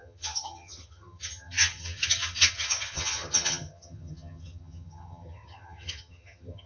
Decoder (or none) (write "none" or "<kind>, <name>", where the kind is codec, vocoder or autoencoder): vocoder, HiFi-GAN